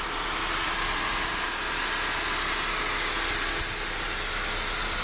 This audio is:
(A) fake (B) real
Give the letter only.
B